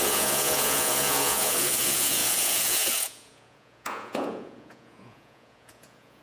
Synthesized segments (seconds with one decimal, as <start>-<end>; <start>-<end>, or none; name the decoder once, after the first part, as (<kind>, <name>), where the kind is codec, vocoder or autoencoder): 0.0-6.2 (vocoder, Vocos)